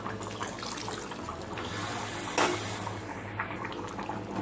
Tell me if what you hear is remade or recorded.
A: recorded